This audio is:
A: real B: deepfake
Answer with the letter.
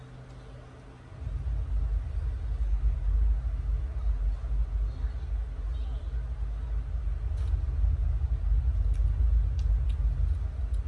A